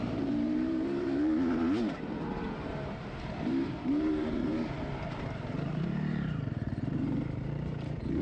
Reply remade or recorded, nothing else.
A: remade